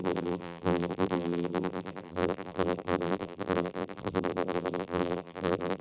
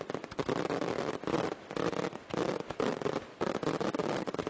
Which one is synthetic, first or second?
first